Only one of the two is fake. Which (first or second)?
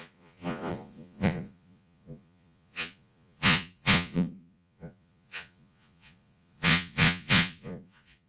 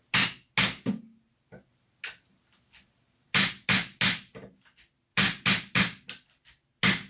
first